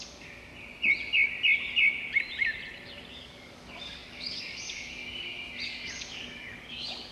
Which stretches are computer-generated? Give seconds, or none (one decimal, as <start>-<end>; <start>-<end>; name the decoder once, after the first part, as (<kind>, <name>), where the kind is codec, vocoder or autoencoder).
0.0-0.5 (codec, DAC); 3.1-5.0; 5.6-7.1